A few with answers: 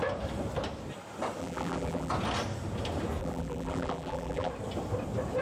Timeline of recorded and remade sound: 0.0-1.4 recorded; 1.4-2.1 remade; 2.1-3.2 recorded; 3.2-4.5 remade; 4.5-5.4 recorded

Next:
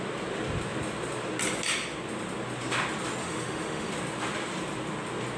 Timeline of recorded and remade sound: 0.0-3.2 recorded; 3.2-3.9 remade; 3.9-5.4 recorded

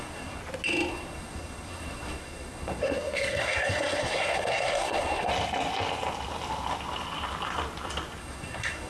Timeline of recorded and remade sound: 0.0-0.4 remade; 0.4-0.9 recorded; 0.9-5.3 remade; 5.3-8.2 recorded; 8.2-8.9 remade

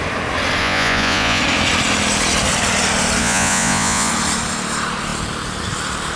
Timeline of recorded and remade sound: 0.0-0.6 recorded; 0.6-1.4 remade; 1.4-3.2 recorded; 3.2-4.1 remade; 4.1-6.2 recorded